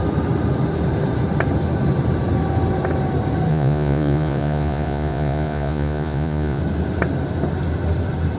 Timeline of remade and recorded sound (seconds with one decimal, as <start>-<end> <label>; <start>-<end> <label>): 0.0-3.5 recorded; 3.5-6.6 remade; 6.6-8.4 recorded

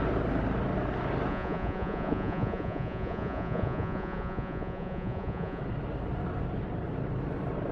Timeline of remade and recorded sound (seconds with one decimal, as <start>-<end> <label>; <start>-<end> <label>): 0.0-1.3 recorded; 1.3-5.6 remade; 5.6-7.7 recorded

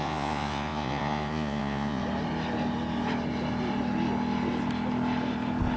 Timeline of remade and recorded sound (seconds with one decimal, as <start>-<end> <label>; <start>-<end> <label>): 0.0-2.0 remade; 2.0-5.8 recorded

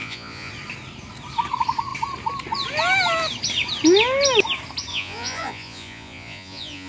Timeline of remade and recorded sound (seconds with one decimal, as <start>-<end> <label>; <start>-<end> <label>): 0.0-0.5 remade; 0.5-4.9 recorded; 4.9-6.9 remade

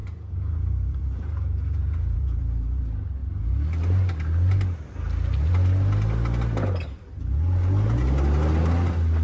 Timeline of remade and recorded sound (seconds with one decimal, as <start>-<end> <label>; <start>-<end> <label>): 0.0-2.8 remade; 2.8-9.2 recorded

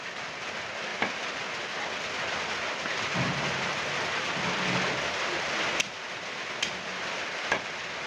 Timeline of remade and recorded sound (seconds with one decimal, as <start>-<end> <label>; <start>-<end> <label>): 0.0-8.1 recorded

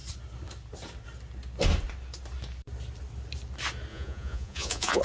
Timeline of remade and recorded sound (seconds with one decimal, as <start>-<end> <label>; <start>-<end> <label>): 0.0-3.9 recorded; 3.9-5.0 remade